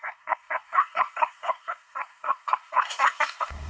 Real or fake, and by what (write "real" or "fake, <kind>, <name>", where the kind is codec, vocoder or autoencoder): fake, codec, SNAC